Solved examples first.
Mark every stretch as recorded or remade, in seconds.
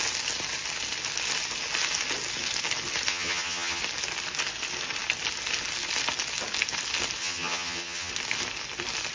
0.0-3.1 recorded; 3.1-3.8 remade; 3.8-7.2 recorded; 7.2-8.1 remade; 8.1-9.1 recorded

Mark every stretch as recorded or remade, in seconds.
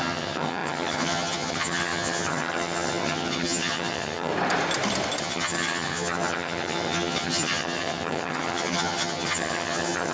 0.0-4.3 remade; 4.3-5.2 recorded; 5.2-10.1 remade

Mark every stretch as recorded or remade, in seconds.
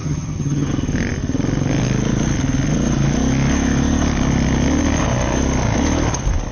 0.0-0.7 remade; 0.7-6.5 recorded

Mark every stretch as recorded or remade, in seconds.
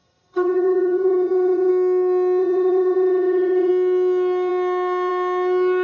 0.0-1.7 remade; 1.7-2.4 recorded; 2.4-3.7 remade; 3.7-5.8 recorded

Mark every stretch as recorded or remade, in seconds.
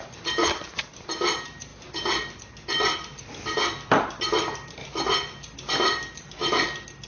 0.0-7.1 recorded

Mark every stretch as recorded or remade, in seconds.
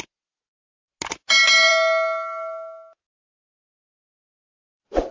0.0-5.1 recorded